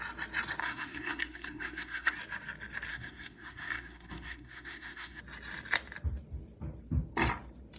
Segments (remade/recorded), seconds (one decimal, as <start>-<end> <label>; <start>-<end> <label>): 0.0-0.6 recorded; 0.6-2.2 remade; 2.2-2.9 recorded; 2.9-5.2 remade; 5.2-7.8 recorded